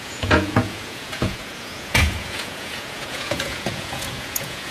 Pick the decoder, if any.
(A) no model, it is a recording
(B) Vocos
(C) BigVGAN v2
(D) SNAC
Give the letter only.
B